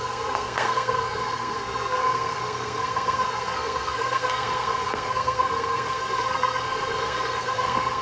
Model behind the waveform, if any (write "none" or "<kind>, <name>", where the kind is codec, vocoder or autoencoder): codec, SNAC